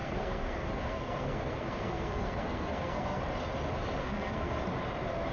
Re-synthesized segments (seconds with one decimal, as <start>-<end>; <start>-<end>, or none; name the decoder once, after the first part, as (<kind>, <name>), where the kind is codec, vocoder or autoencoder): 0.0-3.2 (codec, SNAC); 4.0-4.6

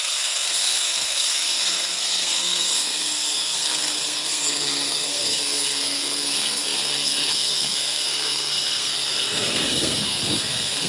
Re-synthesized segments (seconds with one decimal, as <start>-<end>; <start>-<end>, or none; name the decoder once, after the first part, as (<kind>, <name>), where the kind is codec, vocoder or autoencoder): 0.0-10.9 (codec, SNAC)

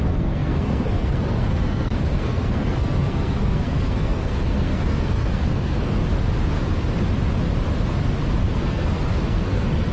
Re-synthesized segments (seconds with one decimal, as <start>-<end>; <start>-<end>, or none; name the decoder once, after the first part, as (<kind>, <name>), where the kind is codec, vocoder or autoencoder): 0.0-6.0 (codec, SNAC); 8.4-9.9

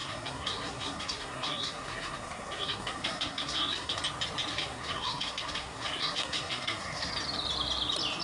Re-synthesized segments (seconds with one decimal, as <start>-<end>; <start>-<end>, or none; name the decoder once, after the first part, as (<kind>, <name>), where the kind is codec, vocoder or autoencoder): 0.0-4.0 (codec, SNAC); 4.5-7.1

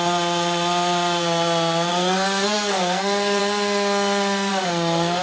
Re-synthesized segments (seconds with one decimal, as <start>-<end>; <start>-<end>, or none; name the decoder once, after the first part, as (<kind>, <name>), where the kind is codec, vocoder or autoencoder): 1.9-3.4 (codec, SNAC); 4.5-5.2

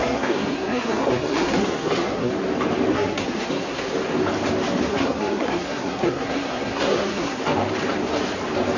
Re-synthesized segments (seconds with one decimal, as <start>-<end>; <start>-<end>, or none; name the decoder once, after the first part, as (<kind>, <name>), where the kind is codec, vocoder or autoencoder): 0.0-2.3 (codec, SNAC); 2.9-3.8; 4.9-7.4